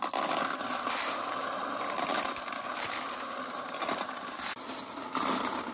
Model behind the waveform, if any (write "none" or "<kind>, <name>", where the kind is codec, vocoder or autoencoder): none